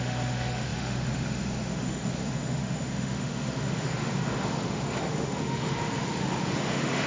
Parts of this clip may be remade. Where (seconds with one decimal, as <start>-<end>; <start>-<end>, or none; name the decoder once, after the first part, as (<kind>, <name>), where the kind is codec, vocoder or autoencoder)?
0.0-7.1 (autoencoder, DAC-VAE)